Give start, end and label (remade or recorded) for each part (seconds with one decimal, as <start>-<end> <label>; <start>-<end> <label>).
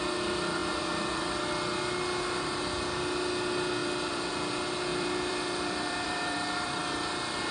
0.0-0.6 recorded; 0.6-1.2 remade; 1.2-3.8 recorded; 3.8-4.3 remade; 4.3-4.9 recorded; 4.9-6.8 remade; 6.8-7.5 recorded